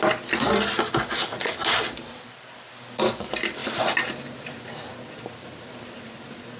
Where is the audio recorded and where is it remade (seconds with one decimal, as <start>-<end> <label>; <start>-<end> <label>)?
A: 0.0-6.6 recorded